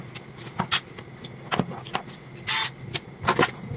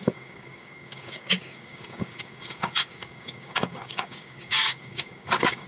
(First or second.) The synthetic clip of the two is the second